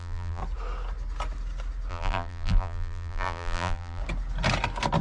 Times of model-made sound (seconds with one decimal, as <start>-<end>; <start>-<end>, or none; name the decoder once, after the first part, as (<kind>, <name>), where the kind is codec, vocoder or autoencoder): 0.0-0.4 (vocoder, BigVGAN v2); 1.9-4.0